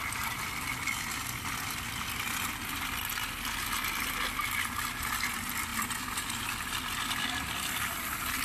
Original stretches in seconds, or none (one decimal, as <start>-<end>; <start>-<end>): 0.0-8.4